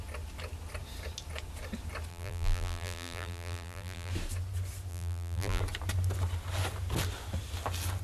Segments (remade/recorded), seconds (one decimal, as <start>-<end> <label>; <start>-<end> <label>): 0.0-2.1 recorded; 2.1-4.1 remade; 4.1-4.9 recorded; 4.9-5.6 remade; 5.6-8.0 recorded